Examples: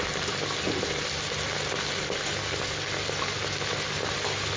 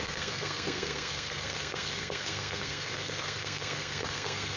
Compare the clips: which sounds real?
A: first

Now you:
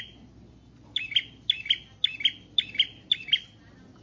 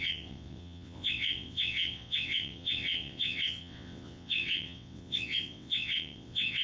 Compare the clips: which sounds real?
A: first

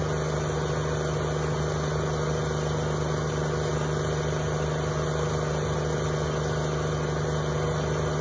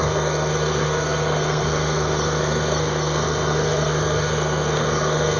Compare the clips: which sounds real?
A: first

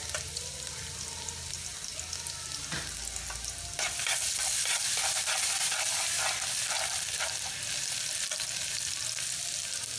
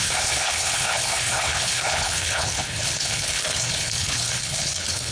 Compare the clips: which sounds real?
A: first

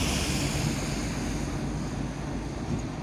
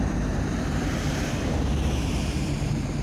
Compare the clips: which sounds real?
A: first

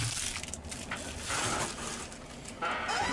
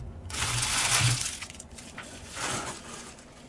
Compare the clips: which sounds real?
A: first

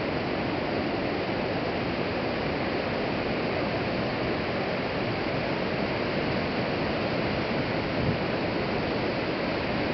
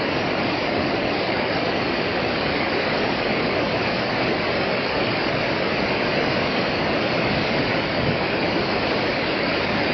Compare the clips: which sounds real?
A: first